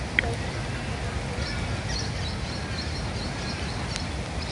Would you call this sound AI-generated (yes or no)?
no